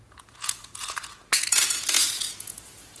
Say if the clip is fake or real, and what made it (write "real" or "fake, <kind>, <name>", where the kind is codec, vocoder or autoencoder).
fake, vocoder, Vocos